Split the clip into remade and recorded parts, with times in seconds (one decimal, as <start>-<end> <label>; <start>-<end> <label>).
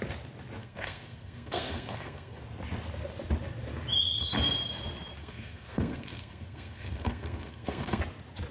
0.0-0.6 recorded; 0.6-2.4 remade; 2.4-5.2 recorded; 5.2-8.0 remade; 8.0-8.5 recorded